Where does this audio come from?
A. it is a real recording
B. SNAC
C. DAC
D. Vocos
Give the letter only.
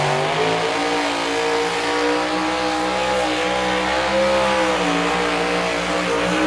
A